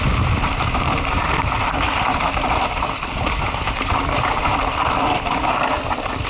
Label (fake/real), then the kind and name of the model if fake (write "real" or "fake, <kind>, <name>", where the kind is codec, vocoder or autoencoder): fake, vocoder, BigVGAN v2